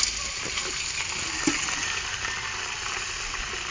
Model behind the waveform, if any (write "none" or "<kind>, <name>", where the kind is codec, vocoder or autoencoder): none